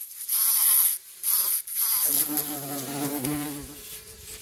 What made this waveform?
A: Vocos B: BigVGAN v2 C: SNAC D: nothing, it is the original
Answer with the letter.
B